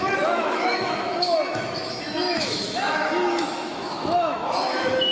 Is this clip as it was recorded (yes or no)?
no